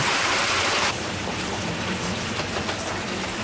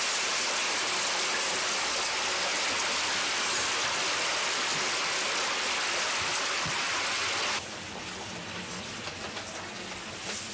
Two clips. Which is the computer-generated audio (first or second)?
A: first